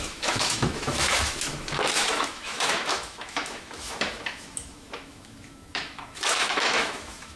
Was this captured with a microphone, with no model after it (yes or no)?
no